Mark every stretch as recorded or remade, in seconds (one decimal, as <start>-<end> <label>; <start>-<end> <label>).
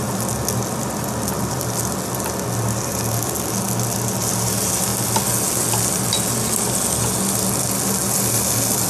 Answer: 0.0-8.9 recorded